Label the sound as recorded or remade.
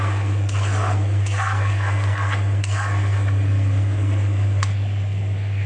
remade